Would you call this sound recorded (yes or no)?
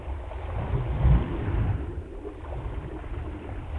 yes